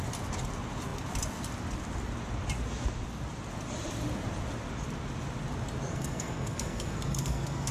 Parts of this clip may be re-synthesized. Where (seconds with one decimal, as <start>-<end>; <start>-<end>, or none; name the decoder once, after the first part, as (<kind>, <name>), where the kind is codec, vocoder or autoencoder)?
5.9-7.7 (codec, SNAC)

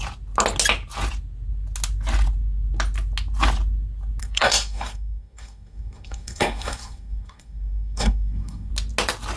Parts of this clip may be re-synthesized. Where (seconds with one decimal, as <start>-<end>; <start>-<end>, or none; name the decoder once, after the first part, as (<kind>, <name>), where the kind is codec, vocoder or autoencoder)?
4.2-8.7 (codec, SNAC)